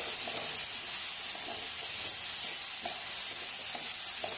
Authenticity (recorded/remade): recorded